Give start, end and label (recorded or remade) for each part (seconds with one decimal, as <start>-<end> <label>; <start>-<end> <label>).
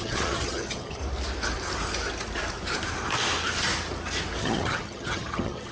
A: 0.0-1.0 remade; 1.0-4.4 recorded; 4.4-5.7 remade